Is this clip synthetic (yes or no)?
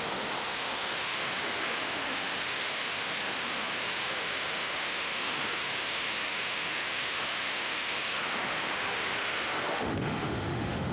yes